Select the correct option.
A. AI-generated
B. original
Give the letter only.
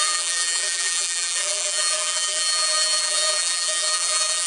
A